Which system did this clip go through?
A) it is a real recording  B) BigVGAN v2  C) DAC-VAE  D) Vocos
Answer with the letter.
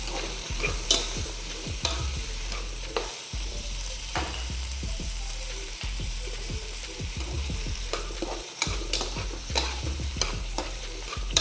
B